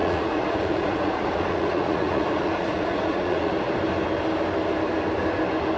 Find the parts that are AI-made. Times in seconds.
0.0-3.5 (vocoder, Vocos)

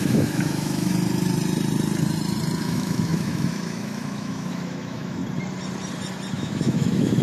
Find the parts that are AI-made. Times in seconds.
0.0-0.9 (autoencoder, DAC-VAE); 2.6-5.2; 6.3-7.2

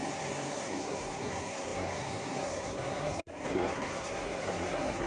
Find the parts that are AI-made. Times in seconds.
0.0-5.1 (codec, SNAC)

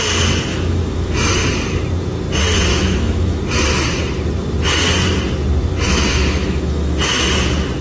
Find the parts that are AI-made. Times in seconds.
0.5-1.3 (autoencoder, DAC-VAE); 2.7-3.4; 5.9-7.2

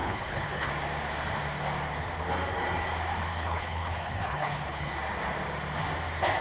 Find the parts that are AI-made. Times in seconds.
0.0-0.7 (codec, HILCodec); 3.3-4.9

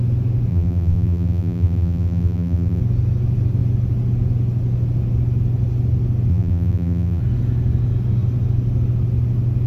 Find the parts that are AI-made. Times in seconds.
0.5-2.8 (vocoder, BigVGAN v2); 6.3-7.2